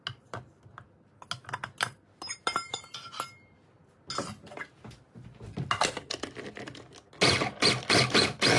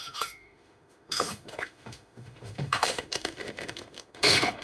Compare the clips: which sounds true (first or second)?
first